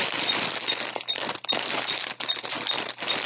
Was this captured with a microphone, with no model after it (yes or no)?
no